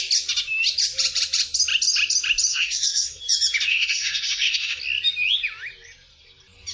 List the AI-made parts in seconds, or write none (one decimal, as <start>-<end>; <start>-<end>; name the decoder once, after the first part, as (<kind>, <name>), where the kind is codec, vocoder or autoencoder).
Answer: 2.5-3.2 (codec, SNAC); 3.7-4.8